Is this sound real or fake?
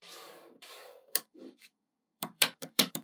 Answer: fake